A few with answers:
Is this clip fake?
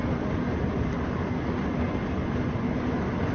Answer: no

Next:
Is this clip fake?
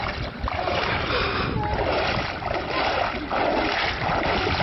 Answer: yes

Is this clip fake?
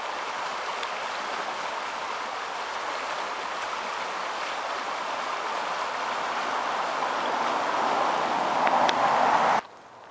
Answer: no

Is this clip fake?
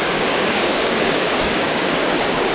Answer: yes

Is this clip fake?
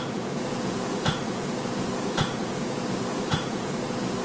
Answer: yes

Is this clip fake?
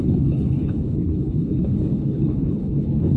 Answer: yes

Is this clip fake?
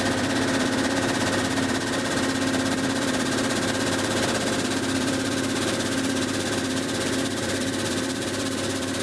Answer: yes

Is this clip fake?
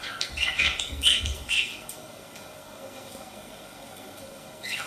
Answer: yes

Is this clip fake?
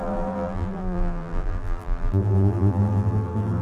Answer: yes